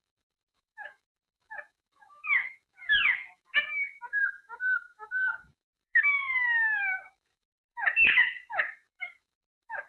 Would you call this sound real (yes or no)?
no